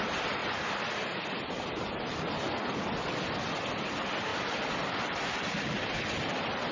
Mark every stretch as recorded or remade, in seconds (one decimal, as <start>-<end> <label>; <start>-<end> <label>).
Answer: 0.0-0.4 recorded; 0.4-1.0 remade; 1.0-6.7 recorded